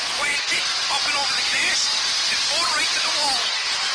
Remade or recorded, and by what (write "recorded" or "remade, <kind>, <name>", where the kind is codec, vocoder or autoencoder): recorded